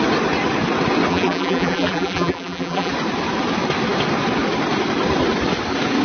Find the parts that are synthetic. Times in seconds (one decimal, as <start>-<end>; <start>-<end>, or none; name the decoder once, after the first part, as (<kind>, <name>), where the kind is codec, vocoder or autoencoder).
1.1-2.9 (vocoder, BigVGAN v2)

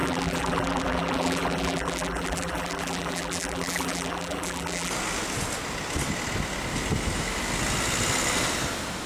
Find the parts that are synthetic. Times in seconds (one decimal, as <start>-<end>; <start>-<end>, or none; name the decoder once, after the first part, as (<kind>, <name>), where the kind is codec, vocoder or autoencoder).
0.0-4.9 (vocoder, BigVGAN v2)

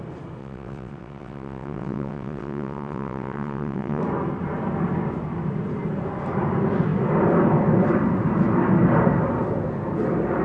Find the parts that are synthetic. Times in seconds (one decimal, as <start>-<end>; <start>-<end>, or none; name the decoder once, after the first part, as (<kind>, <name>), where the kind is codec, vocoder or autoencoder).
0.4-4.0 (vocoder, WaveNeXt)